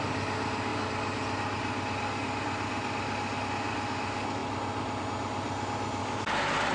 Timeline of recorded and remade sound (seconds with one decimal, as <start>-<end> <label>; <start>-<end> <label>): 0.0-6.0 recorded; 6.0-6.7 remade